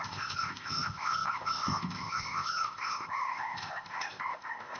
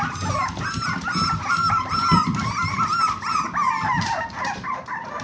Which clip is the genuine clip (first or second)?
second